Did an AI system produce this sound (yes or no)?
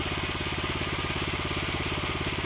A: no